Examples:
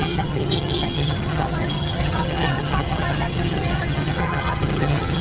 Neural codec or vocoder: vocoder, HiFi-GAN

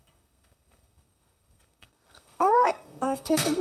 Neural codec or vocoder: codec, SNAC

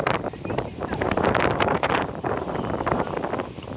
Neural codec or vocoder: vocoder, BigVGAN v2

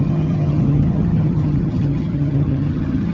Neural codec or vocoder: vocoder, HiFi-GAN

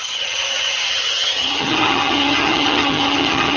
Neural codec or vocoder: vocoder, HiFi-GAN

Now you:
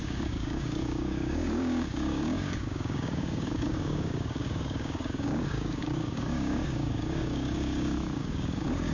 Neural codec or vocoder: codec, DAC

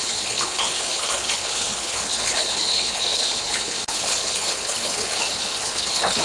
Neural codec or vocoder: codec, HILCodec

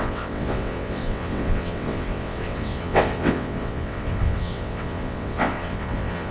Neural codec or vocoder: vocoder, WaveNeXt